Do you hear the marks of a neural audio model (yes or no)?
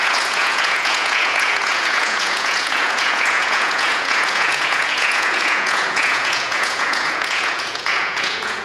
yes